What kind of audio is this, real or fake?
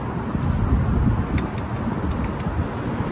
real